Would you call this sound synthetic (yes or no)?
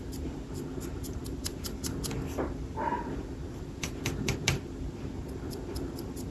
yes